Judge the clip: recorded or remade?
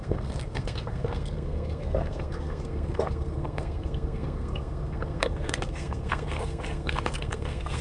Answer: remade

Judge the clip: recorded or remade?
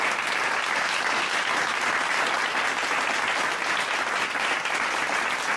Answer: recorded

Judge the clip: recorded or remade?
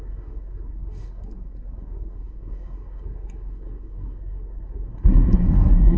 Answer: remade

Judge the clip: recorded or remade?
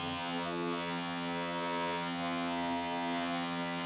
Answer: remade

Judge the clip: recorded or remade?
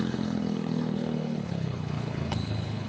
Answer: remade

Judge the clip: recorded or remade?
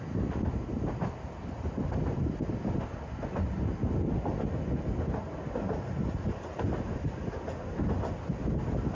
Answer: recorded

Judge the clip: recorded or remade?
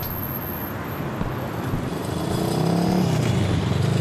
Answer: recorded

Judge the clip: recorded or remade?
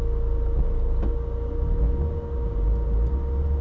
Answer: recorded